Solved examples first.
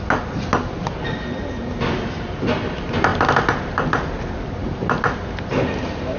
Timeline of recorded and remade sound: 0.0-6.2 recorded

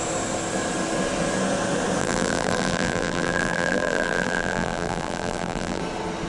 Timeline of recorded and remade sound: 0.0-2.0 recorded; 2.0-5.8 remade; 5.8-6.3 recorded

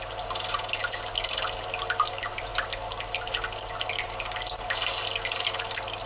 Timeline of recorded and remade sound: 0.0-6.1 recorded

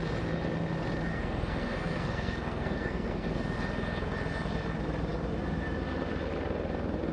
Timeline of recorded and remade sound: 0.0-1.1 recorded; 1.1-3.3 remade; 3.3-7.1 recorded

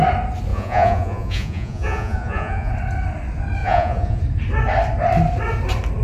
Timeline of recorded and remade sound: 0.0-0.5 recorded; 0.5-2.7 remade; 2.7-3.6 recorded; 3.6-4.2 remade; 4.2-6.0 recorded